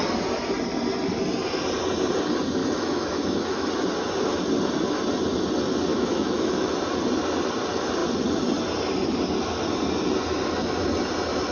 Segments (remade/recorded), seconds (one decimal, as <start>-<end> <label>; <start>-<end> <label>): 0.0-2.6 recorded; 2.6-3.7 remade; 3.7-5.9 recorded; 5.9-6.7 remade; 6.7-11.5 recorded